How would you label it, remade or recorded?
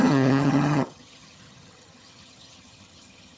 remade